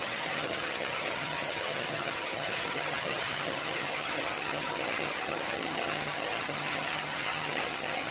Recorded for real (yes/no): no